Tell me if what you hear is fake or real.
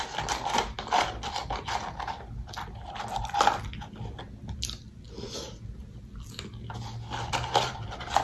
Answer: real